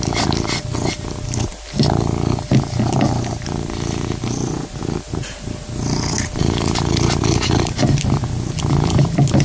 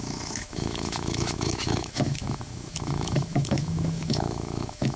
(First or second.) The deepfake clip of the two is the second